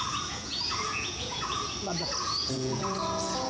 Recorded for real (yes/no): no